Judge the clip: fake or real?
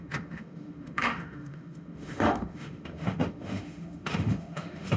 fake